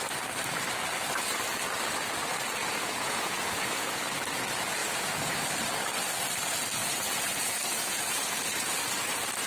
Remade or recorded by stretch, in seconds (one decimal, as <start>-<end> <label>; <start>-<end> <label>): 0.0-2.6 recorded; 2.6-4.0 remade; 4.0-4.8 recorded; 4.8-5.3 remade; 5.3-6.8 recorded; 6.8-8.4 remade; 8.4-9.5 recorded